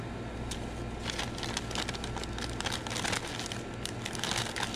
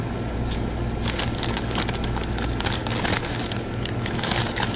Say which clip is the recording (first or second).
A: first